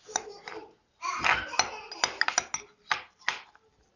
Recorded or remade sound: recorded